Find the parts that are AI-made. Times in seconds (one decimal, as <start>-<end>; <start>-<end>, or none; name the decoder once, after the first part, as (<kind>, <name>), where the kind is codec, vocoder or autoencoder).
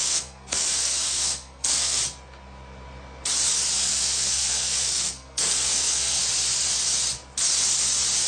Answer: 0.0-2.0 (codec, SNAC); 3.9-6.2